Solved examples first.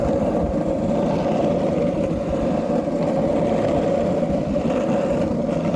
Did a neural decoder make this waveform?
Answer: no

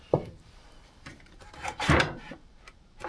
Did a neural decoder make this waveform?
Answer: yes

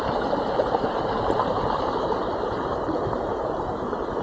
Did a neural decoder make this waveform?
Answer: yes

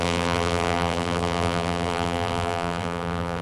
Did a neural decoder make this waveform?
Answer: yes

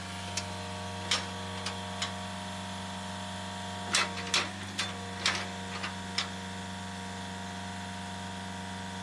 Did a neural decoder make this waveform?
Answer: no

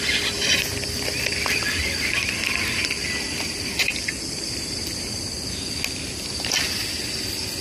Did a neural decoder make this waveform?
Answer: no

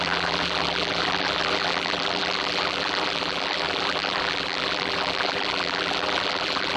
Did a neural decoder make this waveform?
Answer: yes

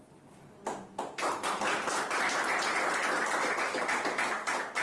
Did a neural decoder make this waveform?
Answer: no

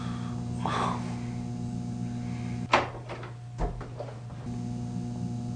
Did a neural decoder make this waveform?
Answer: no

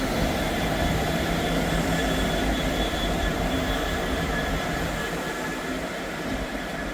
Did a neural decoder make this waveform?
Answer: yes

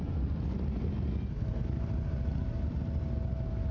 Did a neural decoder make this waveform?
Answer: no